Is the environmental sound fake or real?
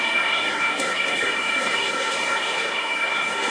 fake